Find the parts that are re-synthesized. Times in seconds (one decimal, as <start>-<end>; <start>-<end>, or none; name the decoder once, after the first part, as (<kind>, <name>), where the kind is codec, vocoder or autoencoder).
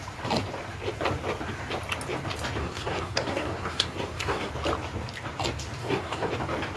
2.6-4.5 (codec, SNAC); 5.8-6.3